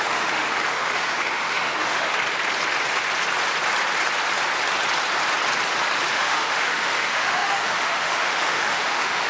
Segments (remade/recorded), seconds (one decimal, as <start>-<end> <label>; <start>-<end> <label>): 0.0-2.1 remade; 2.1-6.1 recorded; 6.1-9.3 remade